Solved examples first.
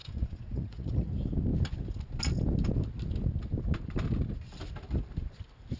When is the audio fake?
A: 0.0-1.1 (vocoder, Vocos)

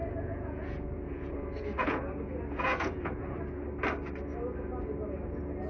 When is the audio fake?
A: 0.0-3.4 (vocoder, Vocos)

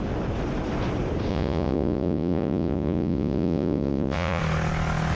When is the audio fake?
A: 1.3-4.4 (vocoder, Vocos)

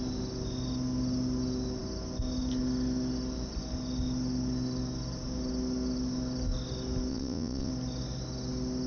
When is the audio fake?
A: 7.1-7.7 (vocoder, Vocos)

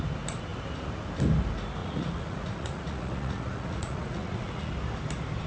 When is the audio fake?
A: 1.8-4.7 (vocoder, Vocos)

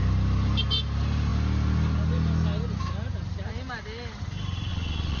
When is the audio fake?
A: 4.7-5.2 (vocoder, Vocos)